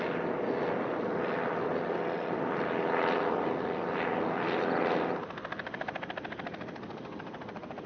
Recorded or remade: recorded